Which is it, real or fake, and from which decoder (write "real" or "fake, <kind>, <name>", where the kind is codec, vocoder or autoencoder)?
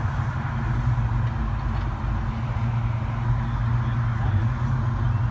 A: real